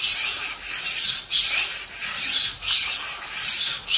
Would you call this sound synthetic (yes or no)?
no